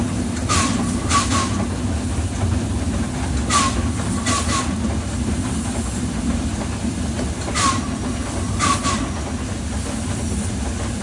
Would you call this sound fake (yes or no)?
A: no